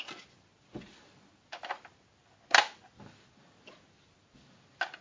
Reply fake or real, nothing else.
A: real